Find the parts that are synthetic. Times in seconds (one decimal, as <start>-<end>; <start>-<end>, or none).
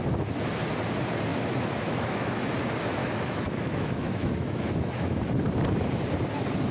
1.3-2.5; 3.0-5.2